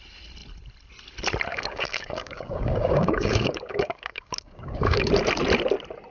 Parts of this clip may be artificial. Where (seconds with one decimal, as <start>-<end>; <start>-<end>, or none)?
1.5-5.1

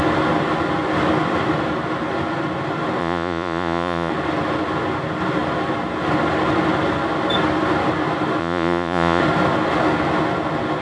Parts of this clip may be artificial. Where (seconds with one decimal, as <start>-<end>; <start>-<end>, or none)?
3.0-4.1; 8.4-9.2

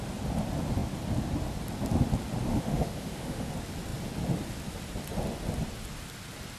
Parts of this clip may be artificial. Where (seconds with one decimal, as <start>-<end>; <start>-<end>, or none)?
2.5-3.5

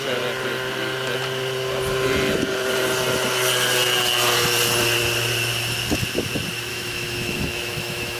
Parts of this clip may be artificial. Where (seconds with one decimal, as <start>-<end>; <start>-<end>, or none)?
6.7-8.2

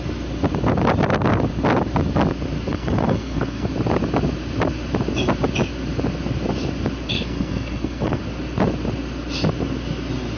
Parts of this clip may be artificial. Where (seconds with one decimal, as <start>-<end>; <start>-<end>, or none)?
2.7-3.7; 7.1-8.2